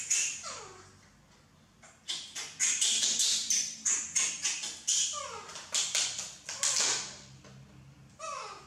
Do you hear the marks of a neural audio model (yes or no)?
no